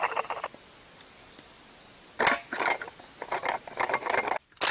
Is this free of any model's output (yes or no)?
yes